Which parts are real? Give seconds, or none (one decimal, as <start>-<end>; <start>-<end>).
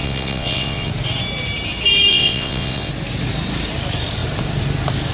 0.9-2.1; 2.9-5.1